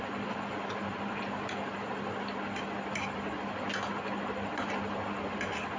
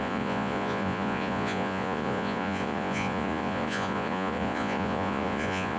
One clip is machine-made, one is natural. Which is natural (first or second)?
first